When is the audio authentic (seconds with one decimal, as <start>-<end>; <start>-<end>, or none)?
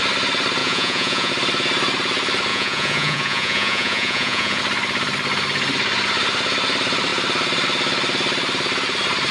0.0-0.6; 1.3-2.5; 4.6-9.3